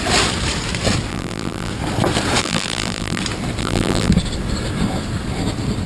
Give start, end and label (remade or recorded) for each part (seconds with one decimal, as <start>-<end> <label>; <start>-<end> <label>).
0.0-1.1 recorded; 1.1-1.7 remade; 1.7-2.4 recorded; 2.4-3.2 remade; 3.2-3.6 recorded; 3.6-4.1 remade; 4.1-5.9 recorded